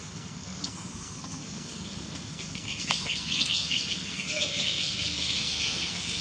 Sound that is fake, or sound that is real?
fake